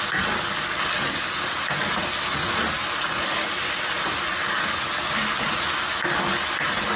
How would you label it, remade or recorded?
recorded